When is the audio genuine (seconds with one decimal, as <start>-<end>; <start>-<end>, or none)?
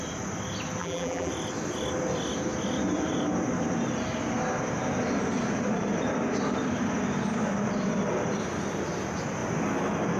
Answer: 0.0-0.8; 1.3-10.2